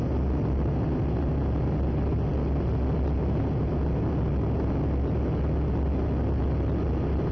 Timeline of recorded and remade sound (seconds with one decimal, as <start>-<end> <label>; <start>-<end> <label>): 0.0-7.3 recorded